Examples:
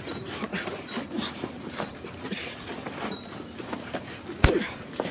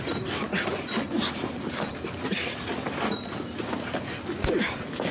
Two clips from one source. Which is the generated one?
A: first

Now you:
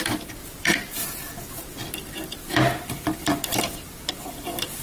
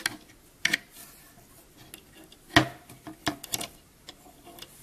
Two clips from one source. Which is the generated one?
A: first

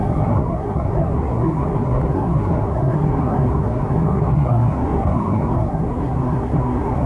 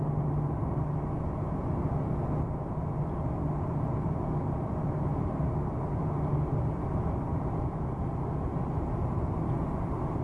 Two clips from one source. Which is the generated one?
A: first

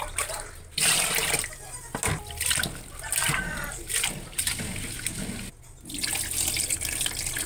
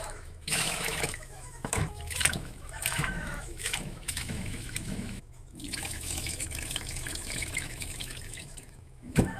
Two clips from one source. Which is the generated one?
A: second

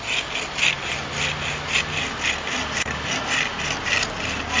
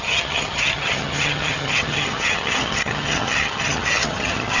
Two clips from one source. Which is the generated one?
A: second